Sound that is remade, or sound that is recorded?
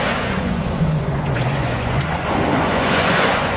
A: remade